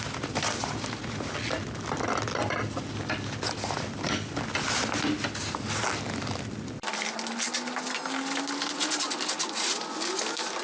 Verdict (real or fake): real